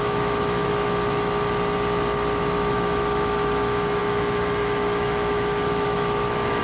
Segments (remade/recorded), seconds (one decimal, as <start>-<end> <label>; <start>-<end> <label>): 0.0-0.7 remade; 0.7-2.7 recorded; 2.7-6.6 remade